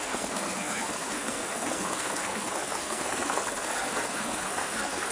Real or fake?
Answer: fake